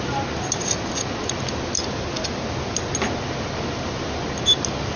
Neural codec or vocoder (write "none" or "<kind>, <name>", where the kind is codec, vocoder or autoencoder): none